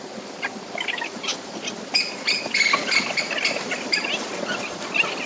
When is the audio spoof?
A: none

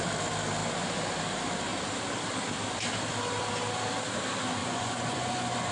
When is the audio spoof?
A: 4.6-5.7 (vocoder, Vocos)